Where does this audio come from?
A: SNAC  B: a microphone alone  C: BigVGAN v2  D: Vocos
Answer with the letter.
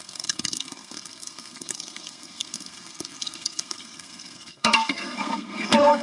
A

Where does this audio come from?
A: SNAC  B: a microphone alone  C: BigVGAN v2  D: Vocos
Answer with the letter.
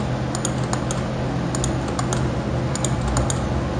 B